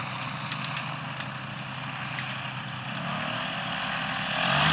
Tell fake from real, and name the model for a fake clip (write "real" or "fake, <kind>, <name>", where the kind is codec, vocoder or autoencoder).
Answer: real